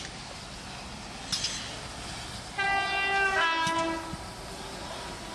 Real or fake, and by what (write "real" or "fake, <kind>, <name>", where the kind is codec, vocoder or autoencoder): real